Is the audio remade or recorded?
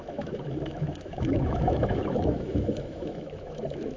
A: remade